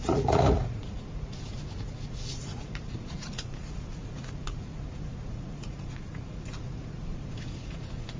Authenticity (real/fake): fake